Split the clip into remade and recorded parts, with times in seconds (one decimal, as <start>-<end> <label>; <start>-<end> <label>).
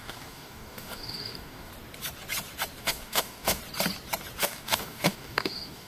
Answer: 0.0-1.7 remade; 1.7-2.8 recorded; 2.8-3.6 remade; 3.6-4.4 recorded; 4.4-5.9 remade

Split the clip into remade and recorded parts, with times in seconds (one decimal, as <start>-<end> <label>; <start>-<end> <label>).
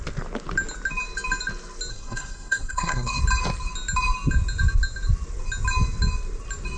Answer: 0.0-1.9 recorded; 1.9-3.2 remade; 3.2-6.8 recorded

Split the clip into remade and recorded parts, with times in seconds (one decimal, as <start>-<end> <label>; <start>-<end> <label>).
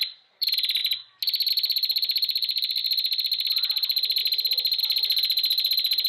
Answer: 0.0-0.8 remade; 0.8-1.5 recorded; 1.5-2.8 remade; 2.8-3.5 recorded; 3.5-4.2 remade; 4.2-4.8 recorded; 4.8-6.1 remade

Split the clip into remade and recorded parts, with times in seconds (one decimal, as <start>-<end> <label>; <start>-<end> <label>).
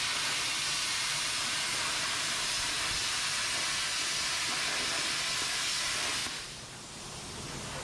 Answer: 0.0-1.0 recorded; 1.0-2.9 remade; 2.9-6.2 recorded; 6.2-7.0 remade; 7.0-7.8 recorded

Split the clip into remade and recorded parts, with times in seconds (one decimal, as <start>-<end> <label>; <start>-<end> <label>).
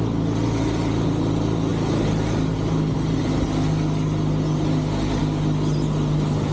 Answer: 0.0-6.5 recorded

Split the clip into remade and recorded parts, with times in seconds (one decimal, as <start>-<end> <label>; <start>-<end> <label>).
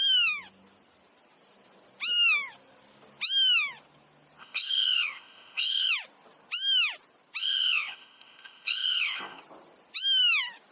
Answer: 0.0-4.4 recorded; 4.4-5.9 remade; 5.9-7.4 recorded; 7.4-9.4 remade; 9.4-10.7 recorded